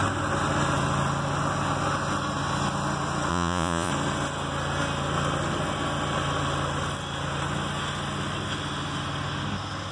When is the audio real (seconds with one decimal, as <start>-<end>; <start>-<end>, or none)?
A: 0.0-3.3; 3.9-9.9